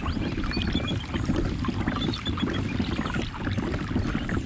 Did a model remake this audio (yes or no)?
no